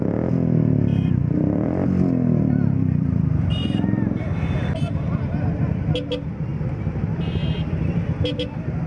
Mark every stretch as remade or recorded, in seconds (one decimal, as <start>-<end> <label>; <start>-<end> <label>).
0.0-0.9 recorded; 0.9-4.8 remade; 4.8-6.5 recorded; 6.5-7.1 remade; 7.1-8.9 recorded